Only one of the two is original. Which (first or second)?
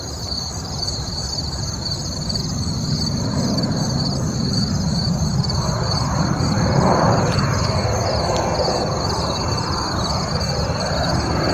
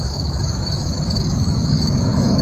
first